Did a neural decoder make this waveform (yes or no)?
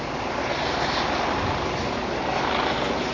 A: no